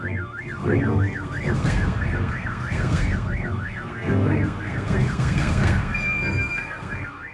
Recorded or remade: remade